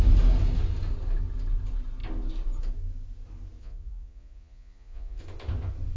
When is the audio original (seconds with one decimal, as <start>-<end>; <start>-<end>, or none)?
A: 0.0-3.6; 5.2-6.0

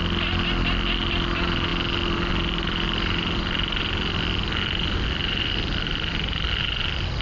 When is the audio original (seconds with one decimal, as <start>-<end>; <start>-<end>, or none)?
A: 0.0-7.2

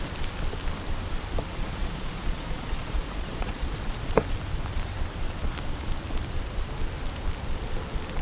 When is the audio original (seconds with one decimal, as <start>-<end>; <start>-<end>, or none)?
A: 0.0-1.5; 4.2-8.2

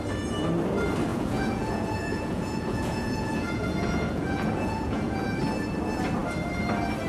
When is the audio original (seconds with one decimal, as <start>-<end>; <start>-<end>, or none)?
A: 0.0-1.1; 5.4-7.1

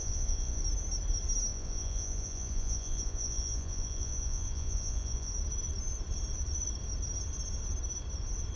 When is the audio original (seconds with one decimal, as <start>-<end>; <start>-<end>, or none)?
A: 0.6-1.5; 5.3-8.6

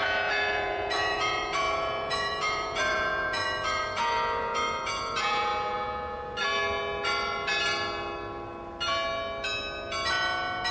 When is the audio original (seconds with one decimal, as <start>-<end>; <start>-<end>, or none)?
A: 5.5-10.7